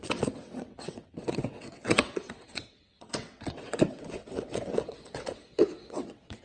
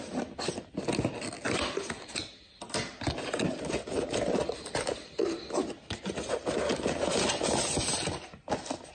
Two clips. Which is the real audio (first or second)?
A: second